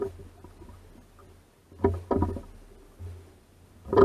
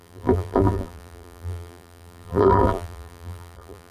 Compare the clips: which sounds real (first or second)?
first